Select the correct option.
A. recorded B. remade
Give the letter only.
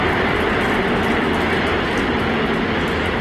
A